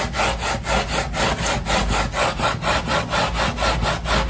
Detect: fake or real real